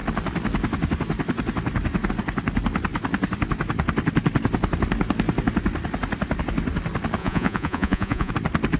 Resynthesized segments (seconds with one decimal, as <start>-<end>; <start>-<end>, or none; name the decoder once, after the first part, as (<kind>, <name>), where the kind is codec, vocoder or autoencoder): 7.2-8.3 (vocoder, Vocos)